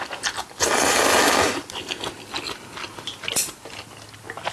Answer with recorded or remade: recorded